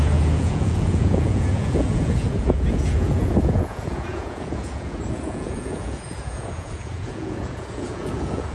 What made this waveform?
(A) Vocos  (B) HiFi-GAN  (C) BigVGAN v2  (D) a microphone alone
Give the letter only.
A